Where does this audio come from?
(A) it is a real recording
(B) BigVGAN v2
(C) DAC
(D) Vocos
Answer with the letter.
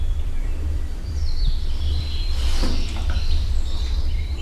B